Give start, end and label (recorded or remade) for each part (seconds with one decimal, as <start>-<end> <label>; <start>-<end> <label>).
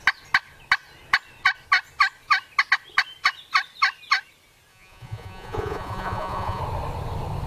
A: 0.0-4.7 recorded; 4.7-6.6 remade; 6.6-7.5 recorded